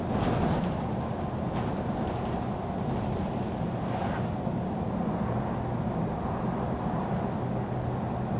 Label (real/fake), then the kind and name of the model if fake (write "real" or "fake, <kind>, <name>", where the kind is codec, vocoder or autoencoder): real